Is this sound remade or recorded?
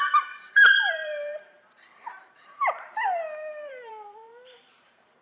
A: remade